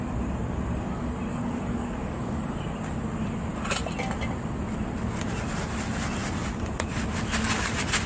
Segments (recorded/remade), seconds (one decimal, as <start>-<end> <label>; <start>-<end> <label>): 0.0-1.3 recorded; 1.3-2.5 remade; 2.5-8.1 recorded